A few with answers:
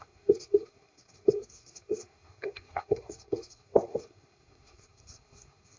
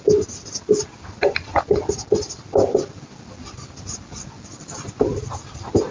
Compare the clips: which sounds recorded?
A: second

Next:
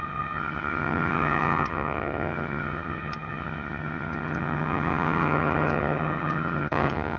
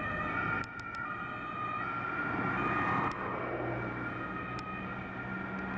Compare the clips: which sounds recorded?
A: second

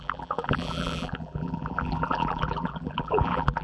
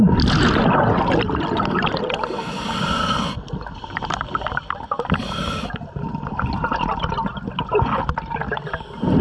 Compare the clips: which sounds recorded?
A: second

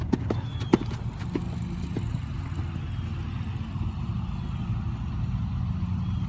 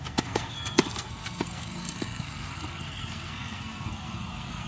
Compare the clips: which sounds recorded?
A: first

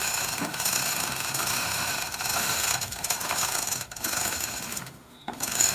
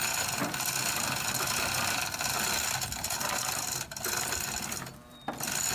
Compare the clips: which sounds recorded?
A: second